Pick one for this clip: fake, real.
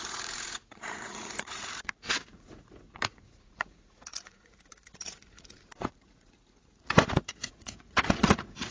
fake